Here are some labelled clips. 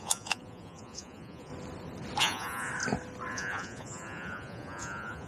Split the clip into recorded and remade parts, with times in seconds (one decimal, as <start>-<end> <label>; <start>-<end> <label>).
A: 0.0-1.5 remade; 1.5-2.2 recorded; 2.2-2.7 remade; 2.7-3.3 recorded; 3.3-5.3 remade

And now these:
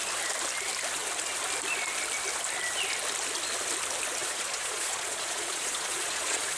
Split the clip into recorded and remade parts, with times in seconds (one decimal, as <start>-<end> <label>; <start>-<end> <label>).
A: 0.0-4.2 recorded; 4.2-6.6 remade

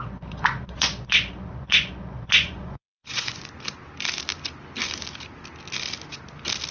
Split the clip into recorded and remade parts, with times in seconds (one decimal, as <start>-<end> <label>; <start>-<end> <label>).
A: 0.0-3.5 remade; 3.5-6.7 recorded